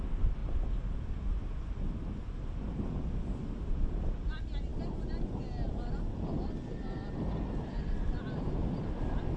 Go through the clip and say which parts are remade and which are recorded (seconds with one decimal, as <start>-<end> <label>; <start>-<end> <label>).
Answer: 0.0-9.4 recorded